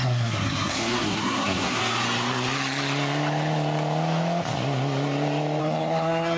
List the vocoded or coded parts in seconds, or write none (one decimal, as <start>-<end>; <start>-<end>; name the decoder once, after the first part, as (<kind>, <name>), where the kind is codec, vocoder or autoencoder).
0.0-1.8 (codec, SNAC); 5.6-6.4